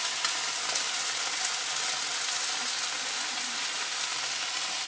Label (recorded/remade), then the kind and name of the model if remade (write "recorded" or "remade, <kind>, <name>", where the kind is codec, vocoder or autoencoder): recorded